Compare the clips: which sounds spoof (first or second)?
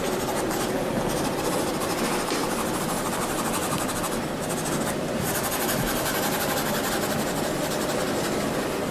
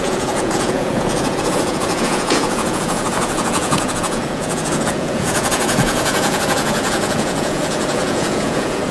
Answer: second